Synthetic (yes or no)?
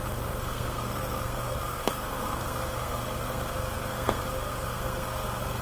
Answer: yes